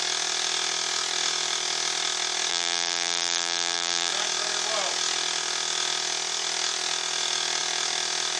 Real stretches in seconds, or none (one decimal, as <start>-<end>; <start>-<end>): 0.0-2.5; 4.1-8.4